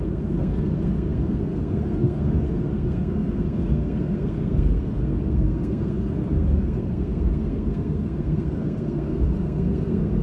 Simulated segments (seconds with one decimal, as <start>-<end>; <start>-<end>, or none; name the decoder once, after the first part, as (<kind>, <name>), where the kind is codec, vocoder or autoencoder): 0.0-10.2 (codec, SNAC)

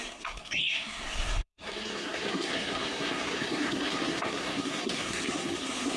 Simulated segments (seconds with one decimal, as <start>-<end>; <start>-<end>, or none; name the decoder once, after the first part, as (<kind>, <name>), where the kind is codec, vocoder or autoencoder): 0.0-6.0 (codec, SNAC)